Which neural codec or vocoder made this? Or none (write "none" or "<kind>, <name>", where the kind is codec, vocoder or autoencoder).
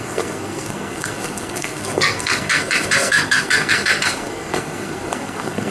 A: codec, SNAC